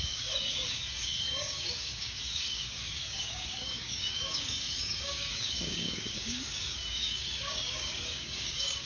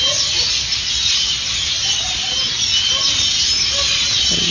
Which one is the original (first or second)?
second